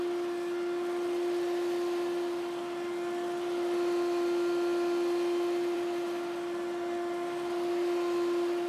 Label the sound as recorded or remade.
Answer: recorded